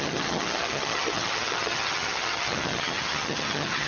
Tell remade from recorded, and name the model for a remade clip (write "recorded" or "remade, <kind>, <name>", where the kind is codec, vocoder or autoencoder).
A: remade, vocoder, HiFi-GAN